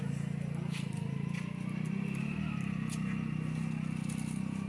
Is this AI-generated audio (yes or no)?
no